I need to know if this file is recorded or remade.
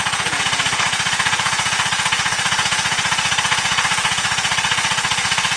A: remade